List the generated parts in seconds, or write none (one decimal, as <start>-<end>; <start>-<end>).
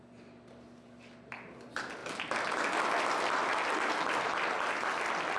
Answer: none